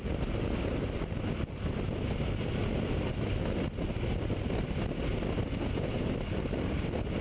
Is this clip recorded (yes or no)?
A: yes